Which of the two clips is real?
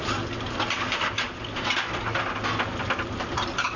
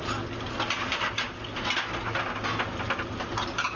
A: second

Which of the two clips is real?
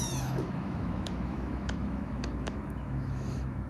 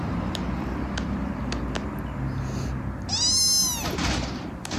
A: second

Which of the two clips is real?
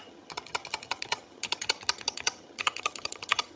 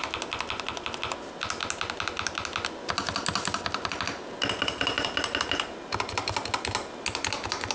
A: second